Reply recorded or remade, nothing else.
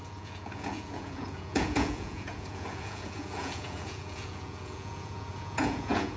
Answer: remade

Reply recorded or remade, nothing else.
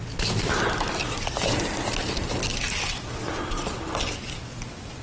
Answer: recorded